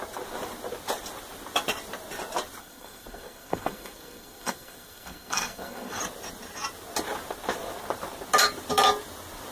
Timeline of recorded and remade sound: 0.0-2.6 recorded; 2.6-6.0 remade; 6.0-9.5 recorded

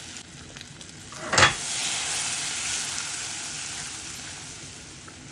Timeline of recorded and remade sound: 0.0-5.3 recorded

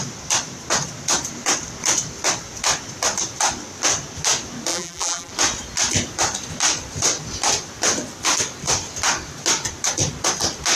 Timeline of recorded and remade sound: 0.0-4.7 recorded; 4.7-5.3 remade; 5.3-10.7 recorded

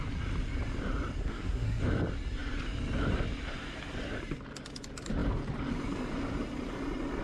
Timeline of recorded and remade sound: 0.0-1.2 recorded; 1.2-1.8 remade; 1.8-7.2 recorded